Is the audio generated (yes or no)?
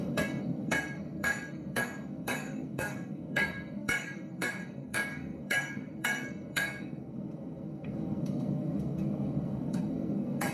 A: yes